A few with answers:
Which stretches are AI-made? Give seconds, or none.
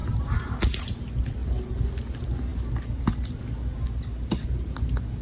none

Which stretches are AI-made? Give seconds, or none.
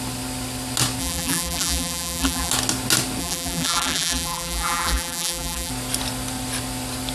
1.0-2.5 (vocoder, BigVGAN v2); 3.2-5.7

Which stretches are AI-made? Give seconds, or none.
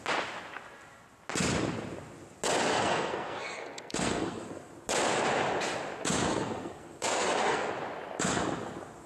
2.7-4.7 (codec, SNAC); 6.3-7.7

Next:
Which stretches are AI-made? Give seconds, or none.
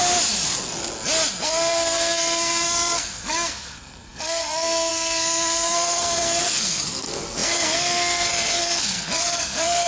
1.4-9.9 (codec, SNAC)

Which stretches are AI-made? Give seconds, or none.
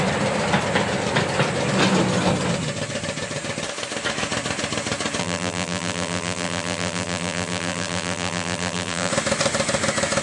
5.2-9.1 (vocoder, BigVGAN v2)